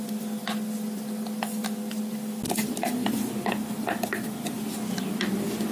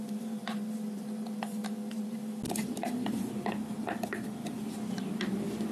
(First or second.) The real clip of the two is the first